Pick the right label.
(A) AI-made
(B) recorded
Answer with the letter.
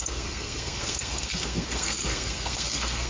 A